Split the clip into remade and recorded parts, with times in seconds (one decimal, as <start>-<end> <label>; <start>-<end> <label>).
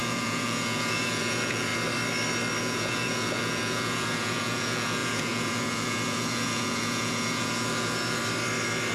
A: 0.0-1.7 remade; 1.7-2.6 recorded; 2.6-8.2 remade; 8.2-8.9 recorded